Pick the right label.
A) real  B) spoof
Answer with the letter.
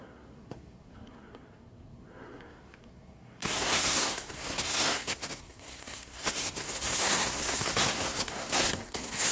B